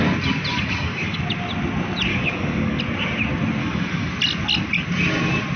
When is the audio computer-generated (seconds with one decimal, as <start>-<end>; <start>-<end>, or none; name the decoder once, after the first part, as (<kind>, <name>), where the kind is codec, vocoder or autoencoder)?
0.5-1.2 (codec, DAC); 2.1-2.8; 3.6-4.1